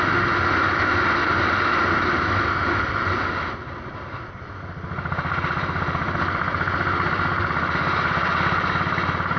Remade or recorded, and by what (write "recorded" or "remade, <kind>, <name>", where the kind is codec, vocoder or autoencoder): recorded